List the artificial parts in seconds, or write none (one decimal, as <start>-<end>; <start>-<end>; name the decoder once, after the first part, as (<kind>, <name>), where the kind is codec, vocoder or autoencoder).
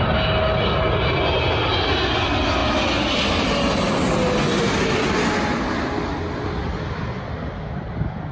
none